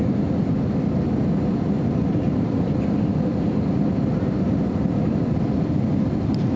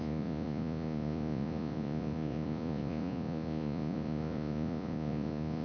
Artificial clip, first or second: second